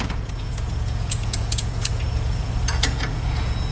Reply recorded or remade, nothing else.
remade